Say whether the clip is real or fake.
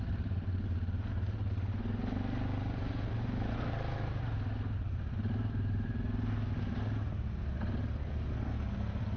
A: real